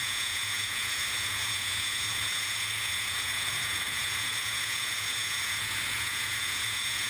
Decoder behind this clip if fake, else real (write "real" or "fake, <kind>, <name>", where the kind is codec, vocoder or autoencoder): fake, vocoder, Vocos